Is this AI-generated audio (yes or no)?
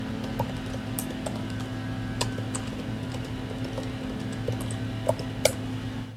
no